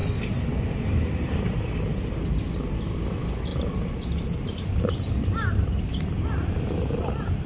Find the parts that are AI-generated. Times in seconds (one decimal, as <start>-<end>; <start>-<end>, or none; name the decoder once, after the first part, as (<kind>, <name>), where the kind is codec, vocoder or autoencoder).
none